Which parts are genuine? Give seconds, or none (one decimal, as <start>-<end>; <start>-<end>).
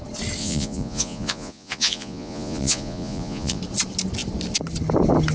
0.0-0.4; 3.6-5.3